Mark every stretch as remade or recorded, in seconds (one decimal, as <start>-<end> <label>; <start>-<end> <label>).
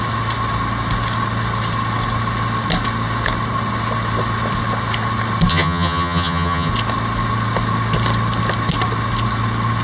0.0-5.5 recorded; 5.5-6.7 remade; 6.7-9.8 recorded